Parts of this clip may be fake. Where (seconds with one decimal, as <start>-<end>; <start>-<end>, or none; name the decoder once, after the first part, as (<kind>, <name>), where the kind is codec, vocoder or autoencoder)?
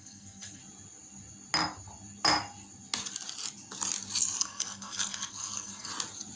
0.0-0.6 (codec, SNAC); 4.4-5.9